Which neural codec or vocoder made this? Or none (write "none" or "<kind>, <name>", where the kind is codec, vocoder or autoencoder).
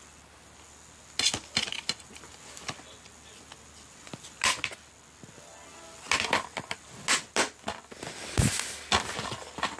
none